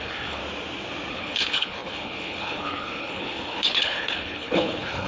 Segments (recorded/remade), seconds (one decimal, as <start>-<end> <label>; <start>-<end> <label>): 0.0-0.4 remade; 0.4-1.1 recorded; 1.1-5.1 remade